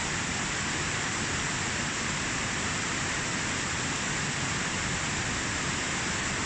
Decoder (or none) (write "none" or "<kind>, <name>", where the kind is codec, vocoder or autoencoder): none